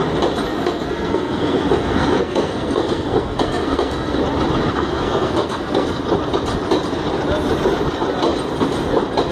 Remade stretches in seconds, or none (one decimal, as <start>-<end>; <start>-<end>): 0.5-4.2; 4.7-6.0